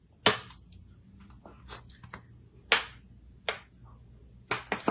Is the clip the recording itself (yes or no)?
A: yes